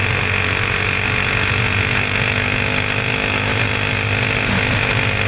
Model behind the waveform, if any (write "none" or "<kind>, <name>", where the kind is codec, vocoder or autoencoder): none